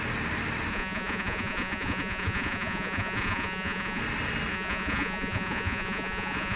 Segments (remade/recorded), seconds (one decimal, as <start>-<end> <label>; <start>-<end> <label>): 0.0-0.7 recorded; 0.7-4.0 remade; 4.0-4.5 recorded; 4.5-6.6 remade